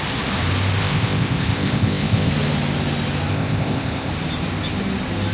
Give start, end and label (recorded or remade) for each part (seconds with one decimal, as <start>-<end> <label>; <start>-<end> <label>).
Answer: 0.0-0.8 recorded; 0.8-2.3 remade; 2.3-3.3 recorded; 3.3-4.1 remade; 4.1-5.3 recorded